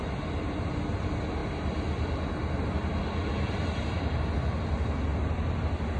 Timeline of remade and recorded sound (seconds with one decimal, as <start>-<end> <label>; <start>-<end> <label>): 0.0-6.0 recorded

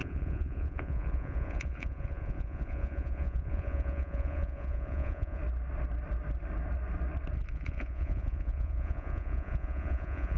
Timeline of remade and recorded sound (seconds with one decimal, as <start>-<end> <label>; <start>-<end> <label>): 0.0-5.4 remade; 5.4-7.5 recorded; 7.5-10.4 remade

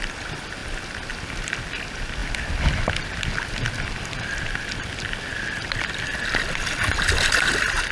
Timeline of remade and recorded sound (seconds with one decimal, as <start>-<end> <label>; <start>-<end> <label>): 0.0-7.9 recorded

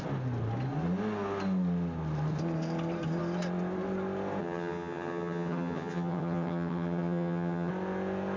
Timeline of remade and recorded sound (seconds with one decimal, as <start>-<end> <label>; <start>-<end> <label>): 0.0-4.4 recorded; 4.4-7.7 remade; 7.7-8.4 recorded

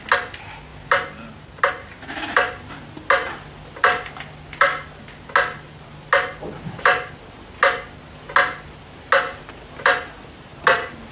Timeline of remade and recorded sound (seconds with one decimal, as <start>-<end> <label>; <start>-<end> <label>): 0.0-11.1 recorded

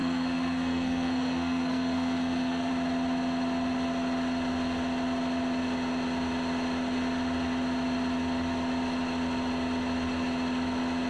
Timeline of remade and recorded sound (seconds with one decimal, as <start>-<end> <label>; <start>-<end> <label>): 0.0-2.7 remade; 2.7-11.1 recorded

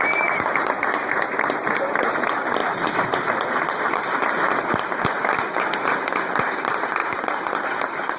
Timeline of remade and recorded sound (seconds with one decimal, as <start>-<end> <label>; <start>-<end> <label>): 0.0-8.2 remade